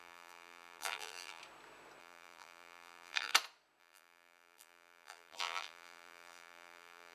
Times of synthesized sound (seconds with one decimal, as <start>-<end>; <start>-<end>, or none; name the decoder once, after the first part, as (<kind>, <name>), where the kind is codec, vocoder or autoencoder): 0.0-1.4 (vocoder, BigVGAN v2); 2.0-3.3; 3.8-7.1

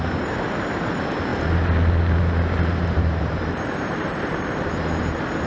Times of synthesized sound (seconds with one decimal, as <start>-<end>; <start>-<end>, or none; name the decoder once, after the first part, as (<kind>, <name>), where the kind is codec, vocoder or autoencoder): 0.0-5.5 (vocoder, BigVGAN v2)

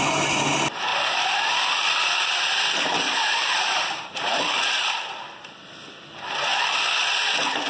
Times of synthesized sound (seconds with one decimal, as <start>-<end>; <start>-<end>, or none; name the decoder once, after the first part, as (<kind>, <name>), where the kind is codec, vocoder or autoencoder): 0.9-4.6 (vocoder, BigVGAN v2)